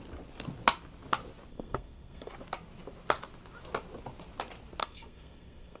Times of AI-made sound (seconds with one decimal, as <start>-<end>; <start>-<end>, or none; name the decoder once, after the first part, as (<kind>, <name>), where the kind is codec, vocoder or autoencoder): 1.5-2.3 (codec, SNAC); 4.8-5.8